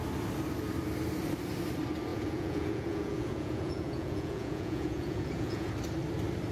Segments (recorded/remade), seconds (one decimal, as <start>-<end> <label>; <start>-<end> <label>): 0.0-2.1 recorded; 2.1-5.7 remade; 5.7-6.5 recorded